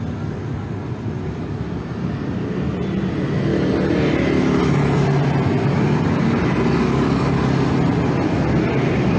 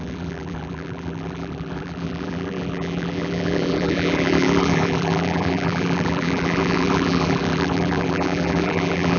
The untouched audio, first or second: first